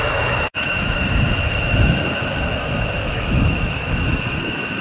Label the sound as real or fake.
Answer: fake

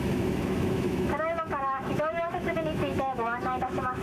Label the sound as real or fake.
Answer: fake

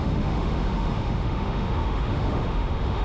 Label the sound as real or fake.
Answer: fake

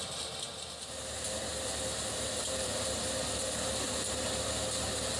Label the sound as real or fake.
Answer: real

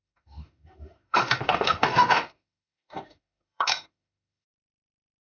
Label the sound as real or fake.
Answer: fake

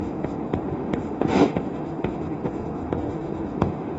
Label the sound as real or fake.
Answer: fake